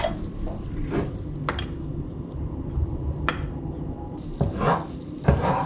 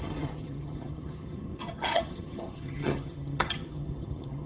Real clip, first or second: first